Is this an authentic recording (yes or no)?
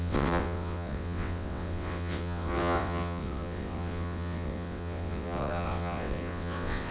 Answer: no